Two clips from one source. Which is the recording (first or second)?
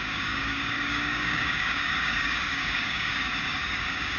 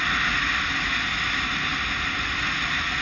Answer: second